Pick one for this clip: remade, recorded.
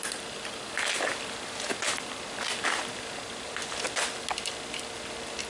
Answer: recorded